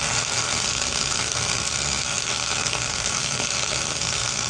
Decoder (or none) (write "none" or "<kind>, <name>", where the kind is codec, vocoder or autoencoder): codec, SNAC